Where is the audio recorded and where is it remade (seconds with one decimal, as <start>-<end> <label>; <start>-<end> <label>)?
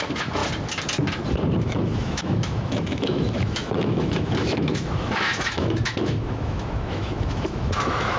0.0-0.4 remade; 0.4-1.6 recorded; 1.6-8.2 remade